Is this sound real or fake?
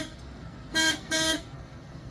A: fake